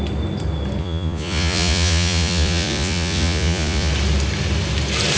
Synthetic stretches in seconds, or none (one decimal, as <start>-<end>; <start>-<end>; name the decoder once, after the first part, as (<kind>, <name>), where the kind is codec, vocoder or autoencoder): 0.8-3.9 (vocoder, Vocos)